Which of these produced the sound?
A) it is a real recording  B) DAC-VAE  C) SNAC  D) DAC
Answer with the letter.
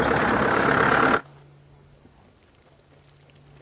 A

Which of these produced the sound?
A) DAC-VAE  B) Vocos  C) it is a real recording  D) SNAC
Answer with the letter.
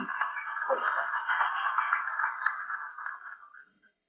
D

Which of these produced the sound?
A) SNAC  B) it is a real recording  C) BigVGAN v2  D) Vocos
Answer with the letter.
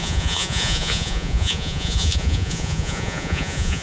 D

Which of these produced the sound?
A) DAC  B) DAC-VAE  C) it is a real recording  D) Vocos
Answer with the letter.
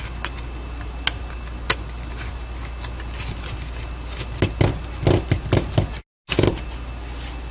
C